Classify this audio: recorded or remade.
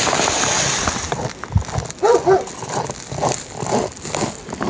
recorded